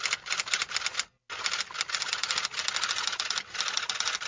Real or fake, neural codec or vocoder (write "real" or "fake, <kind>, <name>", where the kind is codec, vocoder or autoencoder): real